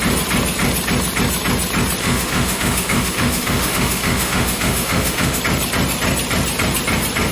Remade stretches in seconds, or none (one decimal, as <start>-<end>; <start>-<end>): 2.0-5.4